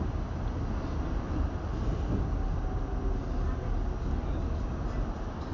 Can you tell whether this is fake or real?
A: real